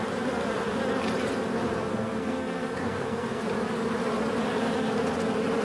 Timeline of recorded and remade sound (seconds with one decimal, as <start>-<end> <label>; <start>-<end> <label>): 0.0-1.9 recorded; 1.9-3.4 remade; 3.4-5.6 recorded